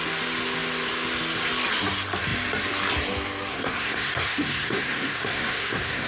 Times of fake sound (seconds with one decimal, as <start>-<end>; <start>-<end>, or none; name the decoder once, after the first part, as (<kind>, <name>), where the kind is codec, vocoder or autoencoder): 3.5-6.1 (codec, SNAC)